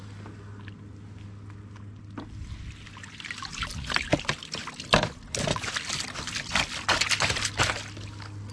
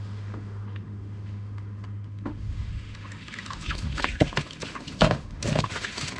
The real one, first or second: first